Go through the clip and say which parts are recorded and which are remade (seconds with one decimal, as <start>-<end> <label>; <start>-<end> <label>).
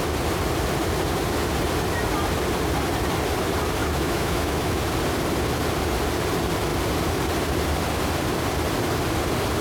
0.0-3.8 recorded; 3.8-4.8 remade; 4.8-9.6 recorded